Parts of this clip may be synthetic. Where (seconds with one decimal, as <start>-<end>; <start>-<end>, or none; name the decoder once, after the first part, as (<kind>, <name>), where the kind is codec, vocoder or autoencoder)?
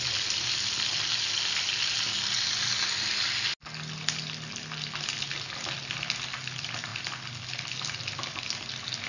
none